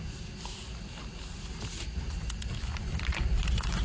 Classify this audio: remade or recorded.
recorded